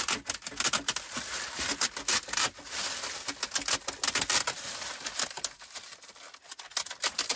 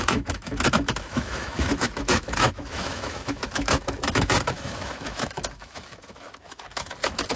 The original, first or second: first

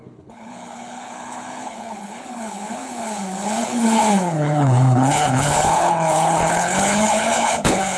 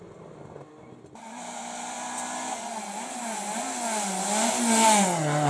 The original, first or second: second